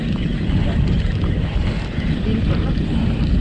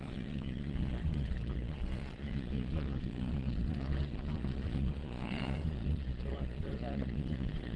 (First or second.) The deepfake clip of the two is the second